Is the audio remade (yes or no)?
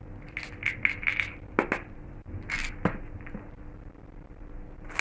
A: no